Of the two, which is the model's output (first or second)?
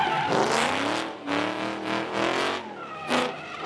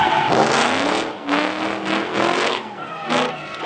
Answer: second